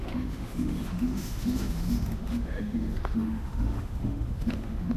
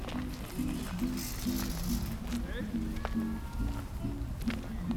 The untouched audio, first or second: second